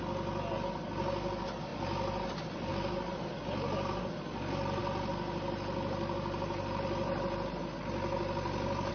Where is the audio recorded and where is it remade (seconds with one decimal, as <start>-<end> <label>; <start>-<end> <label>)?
0.0-8.9 recorded